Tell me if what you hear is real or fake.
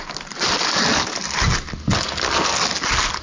real